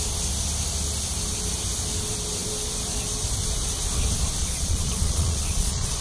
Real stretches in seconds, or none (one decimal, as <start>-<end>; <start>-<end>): 0.0-4.4